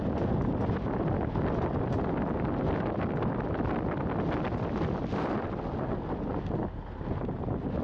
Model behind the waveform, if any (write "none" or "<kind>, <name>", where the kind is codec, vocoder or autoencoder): none